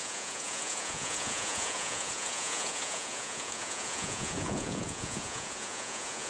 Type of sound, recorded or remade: remade